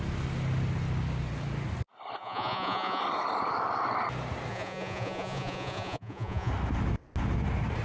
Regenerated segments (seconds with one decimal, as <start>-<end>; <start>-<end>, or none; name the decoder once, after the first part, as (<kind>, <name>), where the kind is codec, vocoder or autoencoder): 2.2-3.0 (vocoder, Vocos); 4.5-6.5

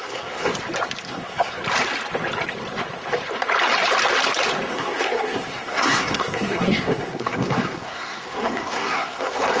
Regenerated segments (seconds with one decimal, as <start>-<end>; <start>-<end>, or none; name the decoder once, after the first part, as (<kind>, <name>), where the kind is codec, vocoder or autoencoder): 0.0-0.5 (codec, SNAC); 1.1-1.6; 4.7-9.6

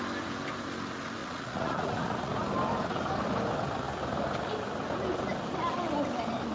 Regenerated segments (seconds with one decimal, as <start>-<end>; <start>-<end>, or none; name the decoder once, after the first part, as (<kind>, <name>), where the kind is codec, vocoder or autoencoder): 1.2-2.3 (vocoder, Vocos)